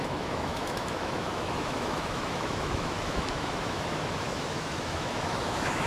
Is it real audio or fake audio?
fake